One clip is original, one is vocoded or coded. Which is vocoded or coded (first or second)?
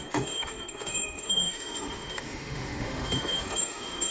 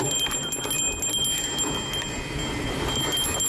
first